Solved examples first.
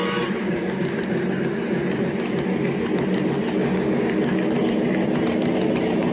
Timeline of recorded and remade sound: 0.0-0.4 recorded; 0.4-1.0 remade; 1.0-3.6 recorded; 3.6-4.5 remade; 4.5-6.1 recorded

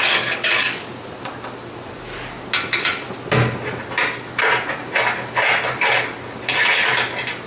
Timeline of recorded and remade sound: 0.0-0.9 remade; 0.9-7.5 recorded

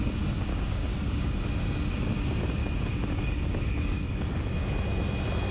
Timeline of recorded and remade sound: 0.0-0.5 recorded; 0.5-1.3 remade; 1.3-2.6 recorded; 2.6-4.2 remade; 4.2-5.5 recorded